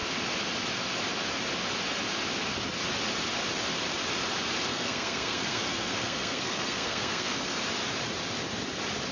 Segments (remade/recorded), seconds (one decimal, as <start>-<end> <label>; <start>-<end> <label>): 0.0-4.7 recorded; 4.7-7.6 remade; 7.6-9.1 recorded